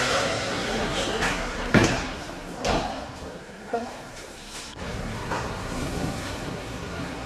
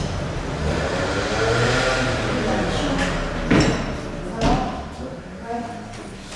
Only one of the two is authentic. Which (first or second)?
second